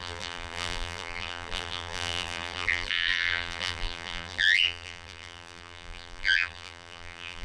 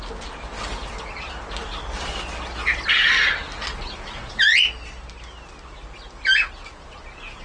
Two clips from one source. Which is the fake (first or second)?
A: first